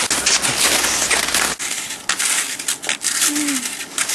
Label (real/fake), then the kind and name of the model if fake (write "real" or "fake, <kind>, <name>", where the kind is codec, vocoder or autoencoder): real